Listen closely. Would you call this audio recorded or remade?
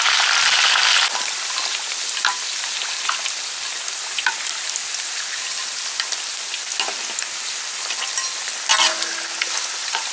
recorded